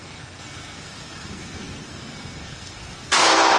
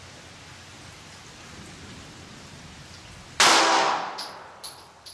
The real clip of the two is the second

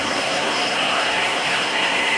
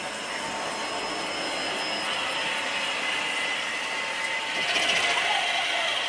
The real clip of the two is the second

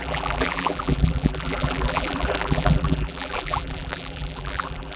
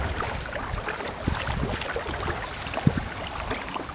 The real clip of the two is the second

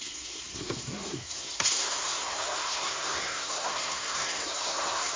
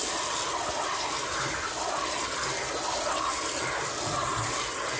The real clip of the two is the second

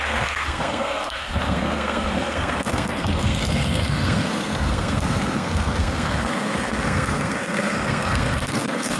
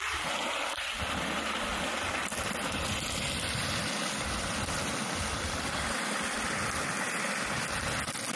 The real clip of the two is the second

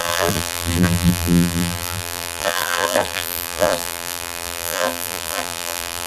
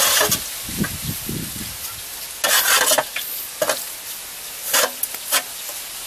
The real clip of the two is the second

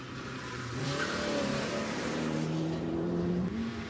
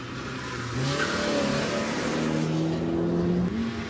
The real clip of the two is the second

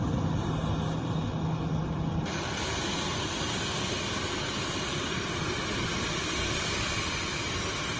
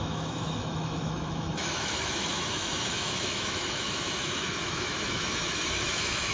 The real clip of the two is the first